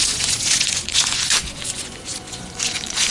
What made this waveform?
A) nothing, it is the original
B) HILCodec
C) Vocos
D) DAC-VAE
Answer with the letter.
C